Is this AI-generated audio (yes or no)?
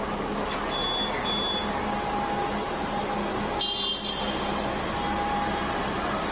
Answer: no